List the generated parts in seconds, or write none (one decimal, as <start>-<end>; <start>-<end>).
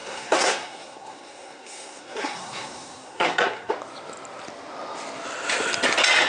0.0-3.7